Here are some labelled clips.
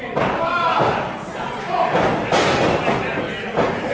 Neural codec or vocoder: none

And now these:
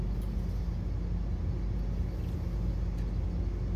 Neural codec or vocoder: none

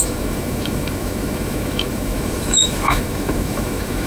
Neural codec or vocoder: autoencoder, DAC-VAE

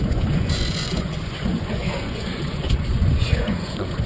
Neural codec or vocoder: vocoder, Vocos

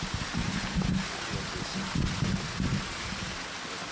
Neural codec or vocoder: none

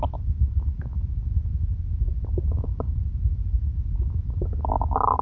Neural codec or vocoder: none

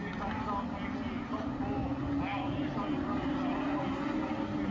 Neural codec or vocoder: none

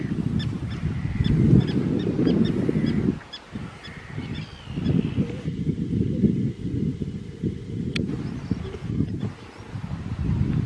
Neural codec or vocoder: none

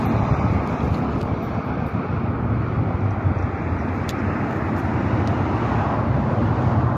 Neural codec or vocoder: none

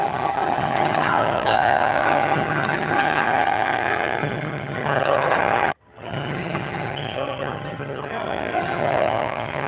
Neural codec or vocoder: vocoder, HiFi-GAN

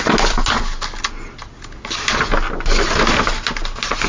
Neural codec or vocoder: none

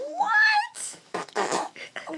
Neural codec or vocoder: autoencoder, DAC-VAE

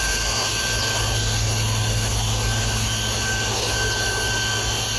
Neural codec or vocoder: none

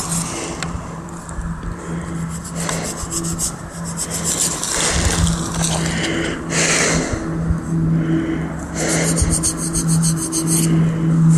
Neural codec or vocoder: none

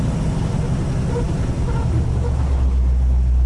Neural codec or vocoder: none